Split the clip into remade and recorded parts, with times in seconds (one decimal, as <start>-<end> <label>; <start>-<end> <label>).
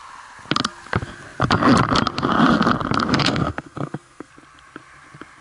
0.0-3.1 recorded; 3.1-4.3 remade; 4.3-5.4 recorded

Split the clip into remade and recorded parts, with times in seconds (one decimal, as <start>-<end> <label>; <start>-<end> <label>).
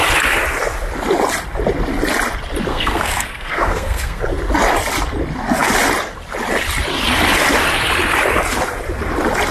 0.0-2.7 recorded; 2.7-4.2 remade; 4.2-9.5 recorded